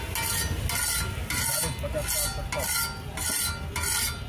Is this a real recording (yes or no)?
yes